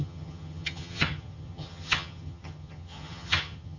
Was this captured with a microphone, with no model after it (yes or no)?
no